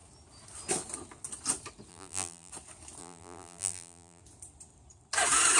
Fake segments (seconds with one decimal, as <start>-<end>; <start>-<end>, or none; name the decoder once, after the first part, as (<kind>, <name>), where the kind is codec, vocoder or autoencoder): 1.9-2.5 (vocoder, BigVGAN v2); 3.0-4.2